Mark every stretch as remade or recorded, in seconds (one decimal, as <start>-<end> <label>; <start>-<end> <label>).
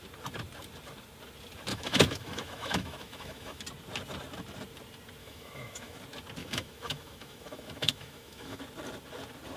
0.0-1.7 recorded; 1.7-3.6 remade; 3.6-5.2 recorded; 5.2-6.0 remade; 6.0-6.4 recorded; 6.4-8.6 remade; 8.6-9.6 recorded